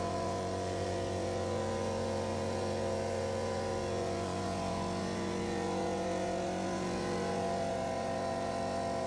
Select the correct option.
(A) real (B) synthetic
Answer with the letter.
B